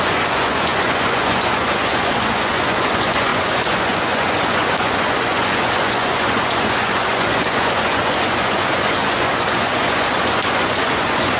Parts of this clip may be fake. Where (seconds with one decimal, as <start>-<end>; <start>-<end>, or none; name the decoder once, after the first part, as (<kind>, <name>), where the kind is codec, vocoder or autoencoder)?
0.0-11.4 (vocoder, Vocos)